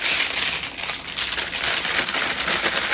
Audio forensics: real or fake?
real